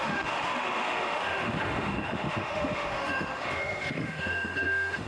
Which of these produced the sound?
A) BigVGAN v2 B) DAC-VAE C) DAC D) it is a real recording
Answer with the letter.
B